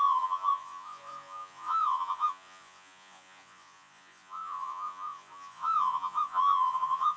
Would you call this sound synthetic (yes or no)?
yes